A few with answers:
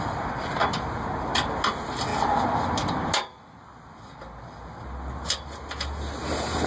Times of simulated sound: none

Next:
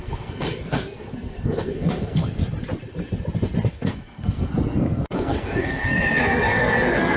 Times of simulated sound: 0.0-2.4 (codec, SNAC); 3.7-7.2